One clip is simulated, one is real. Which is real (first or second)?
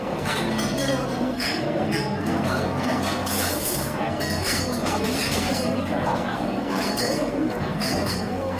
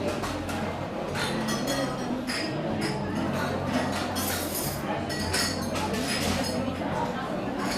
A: second